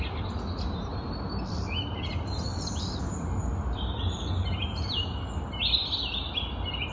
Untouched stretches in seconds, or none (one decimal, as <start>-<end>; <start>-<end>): 0.0-0.9; 1.6-2.5; 4.3-6.9